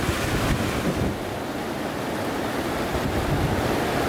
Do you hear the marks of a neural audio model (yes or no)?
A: yes